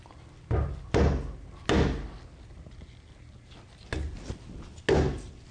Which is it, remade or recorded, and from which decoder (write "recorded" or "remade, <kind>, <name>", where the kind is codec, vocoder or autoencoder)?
recorded